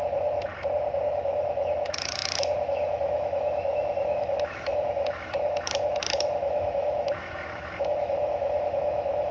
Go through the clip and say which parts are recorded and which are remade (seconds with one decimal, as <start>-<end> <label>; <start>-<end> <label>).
0.0-0.5 remade; 0.5-1.0 recorded; 1.0-9.3 remade